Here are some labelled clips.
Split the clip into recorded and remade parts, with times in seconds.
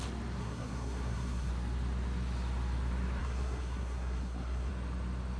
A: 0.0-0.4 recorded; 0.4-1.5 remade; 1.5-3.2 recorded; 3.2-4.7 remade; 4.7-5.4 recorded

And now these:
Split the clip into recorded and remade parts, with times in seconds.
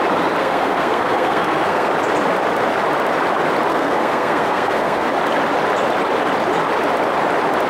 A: 0.0-0.4 recorded; 0.4-1.9 remade; 1.9-3.7 recorded; 3.7-5.1 remade; 5.1-7.7 recorded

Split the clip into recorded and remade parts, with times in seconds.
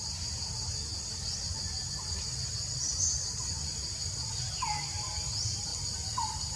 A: 0.0-6.6 recorded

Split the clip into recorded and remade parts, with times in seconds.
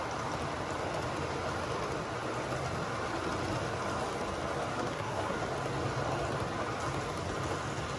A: 0.0-4.7 recorded; 4.7-5.4 remade; 5.4-8.0 recorded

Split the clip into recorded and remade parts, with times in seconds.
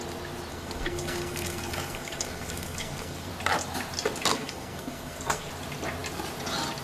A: 0.0-0.5 recorded; 0.5-3.3 remade; 3.3-4.3 recorded; 4.3-5.5 remade; 5.5-6.8 recorded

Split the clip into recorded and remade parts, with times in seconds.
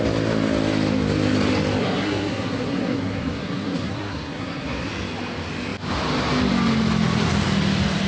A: 0.0-1.8 recorded; 1.8-4.9 remade; 4.9-8.1 recorded